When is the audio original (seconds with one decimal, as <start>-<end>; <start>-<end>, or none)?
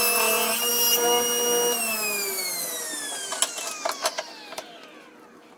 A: 0.0-5.6